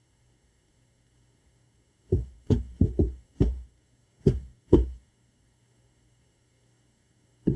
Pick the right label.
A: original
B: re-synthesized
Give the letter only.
B